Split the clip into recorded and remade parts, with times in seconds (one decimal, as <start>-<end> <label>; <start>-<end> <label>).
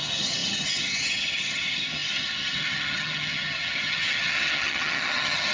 0.0-5.5 remade